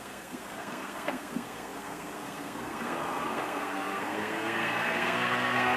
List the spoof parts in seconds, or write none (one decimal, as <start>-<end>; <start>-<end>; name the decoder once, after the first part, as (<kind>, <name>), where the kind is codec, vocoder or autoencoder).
0.0-5.8 (codec, SNAC)